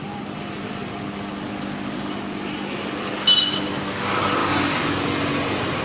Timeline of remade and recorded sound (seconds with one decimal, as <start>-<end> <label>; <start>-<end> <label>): 0.0-5.8 recorded